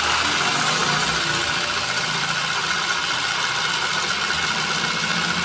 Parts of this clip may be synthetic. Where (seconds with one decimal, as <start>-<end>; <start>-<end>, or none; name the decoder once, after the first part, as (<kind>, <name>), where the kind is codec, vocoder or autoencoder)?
none